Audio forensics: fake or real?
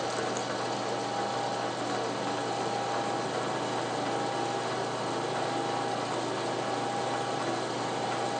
real